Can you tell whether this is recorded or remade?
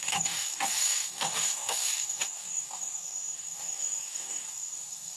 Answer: remade